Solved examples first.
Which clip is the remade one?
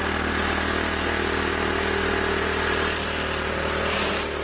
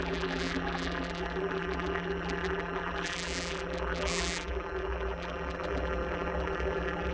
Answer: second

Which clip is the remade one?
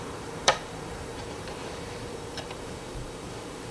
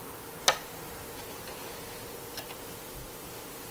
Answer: first